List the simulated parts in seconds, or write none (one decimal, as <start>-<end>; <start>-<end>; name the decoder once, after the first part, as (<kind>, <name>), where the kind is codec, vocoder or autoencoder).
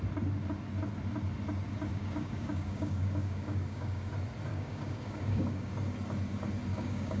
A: 1.9-4.1 (codec, DAC); 4.5-5.7; 6.7-7.2